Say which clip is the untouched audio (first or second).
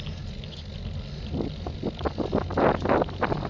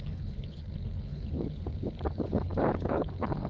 first